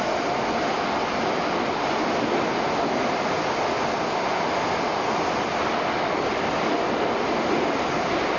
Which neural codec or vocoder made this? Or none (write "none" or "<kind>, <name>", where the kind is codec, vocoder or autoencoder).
none